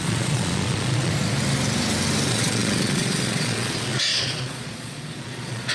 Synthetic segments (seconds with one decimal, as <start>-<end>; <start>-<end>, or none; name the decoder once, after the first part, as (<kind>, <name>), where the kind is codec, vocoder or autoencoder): 0.0-1.1 (vocoder, Vocos); 2.3-5.7